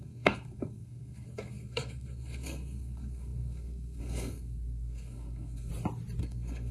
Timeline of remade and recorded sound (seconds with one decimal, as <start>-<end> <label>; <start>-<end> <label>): 0.0-5.7 remade; 5.7-6.2 recorded; 6.2-6.7 remade